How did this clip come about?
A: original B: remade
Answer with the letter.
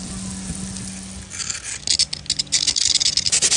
A